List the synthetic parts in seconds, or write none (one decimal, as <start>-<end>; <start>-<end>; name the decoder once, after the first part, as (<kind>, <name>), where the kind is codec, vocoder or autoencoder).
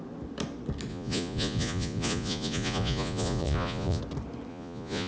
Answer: 0.9-4.0 (vocoder, Vocos); 4.5-5.1